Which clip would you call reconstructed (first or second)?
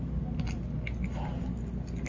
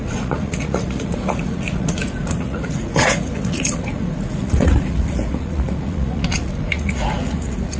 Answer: second